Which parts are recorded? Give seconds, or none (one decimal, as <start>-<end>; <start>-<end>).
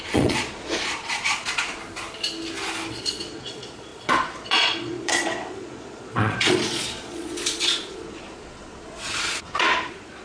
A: 1.8-2.9